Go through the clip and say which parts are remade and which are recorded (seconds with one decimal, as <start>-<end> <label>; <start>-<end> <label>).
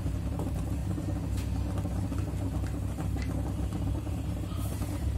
0.0-0.8 remade; 0.8-3.9 recorded; 3.9-5.2 remade